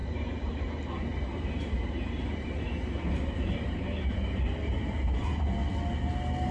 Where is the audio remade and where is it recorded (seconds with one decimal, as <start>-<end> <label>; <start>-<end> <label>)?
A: 0.0-0.6 remade; 0.6-1.3 recorded; 1.3-5.2 remade; 5.2-6.5 recorded